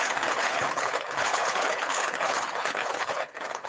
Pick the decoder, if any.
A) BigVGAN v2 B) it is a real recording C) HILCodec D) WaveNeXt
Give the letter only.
C